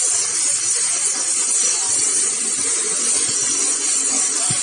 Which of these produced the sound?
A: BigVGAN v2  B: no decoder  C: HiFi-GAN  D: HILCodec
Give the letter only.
B